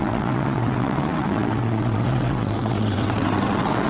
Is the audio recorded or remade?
remade